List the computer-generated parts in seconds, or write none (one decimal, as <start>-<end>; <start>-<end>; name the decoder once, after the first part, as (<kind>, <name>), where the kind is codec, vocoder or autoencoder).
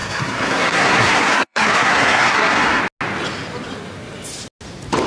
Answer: 0.0-2.8 (codec, SNAC)